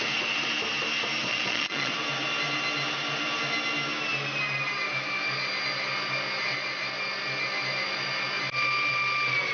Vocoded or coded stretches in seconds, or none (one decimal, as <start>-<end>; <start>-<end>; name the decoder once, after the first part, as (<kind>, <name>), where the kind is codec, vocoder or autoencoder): 1.3-1.9 (vocoder, Vocos)